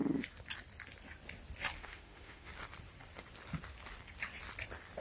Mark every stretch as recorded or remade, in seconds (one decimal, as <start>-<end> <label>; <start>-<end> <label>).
0.0-1.8 recorded; 1.8-2.5 remade; 2.5-5.0 recorded